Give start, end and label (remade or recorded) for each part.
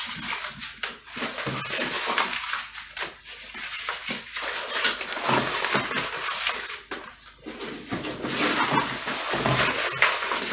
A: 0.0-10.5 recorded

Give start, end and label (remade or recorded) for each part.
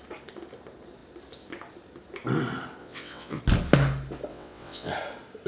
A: 0.0-2.8 recorded; 2.8-3.4 remade; 3.4-4.3 recorded; 4.3-4.9 remade; 4.9-5.5 recorded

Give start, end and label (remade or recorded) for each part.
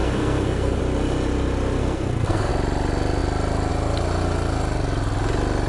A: 0.0-0.8 remade; 0.8-1.8 recorded; 1.8-2.5 remade; 2.5-5.7 recorded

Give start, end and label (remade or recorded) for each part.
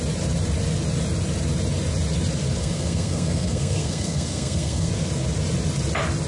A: 0.0-2.6 recorded; 2.6-4.9 remade; 4.9-6.3 recorded